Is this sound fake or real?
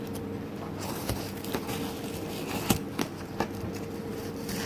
real